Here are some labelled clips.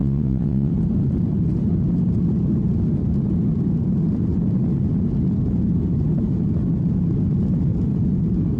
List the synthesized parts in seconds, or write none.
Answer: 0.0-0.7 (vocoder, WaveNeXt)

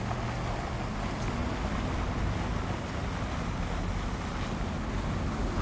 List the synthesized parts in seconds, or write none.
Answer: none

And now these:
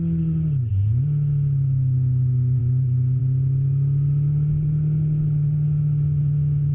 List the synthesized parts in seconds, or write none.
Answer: none

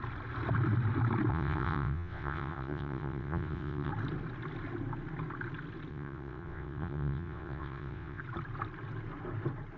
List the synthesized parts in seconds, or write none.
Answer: 1.3-3.9 (vocoder, WaveNeXt); 5.9-8.2

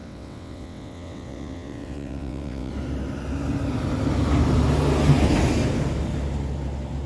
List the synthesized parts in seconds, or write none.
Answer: 0.0-2.7 (vocoder, WaveNeXt)

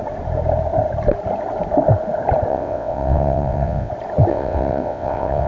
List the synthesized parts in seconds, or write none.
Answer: 2.5-3.9 (vocoder, WaveNeXt); 4.3-5.5